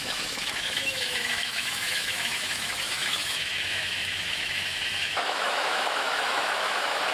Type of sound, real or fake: fake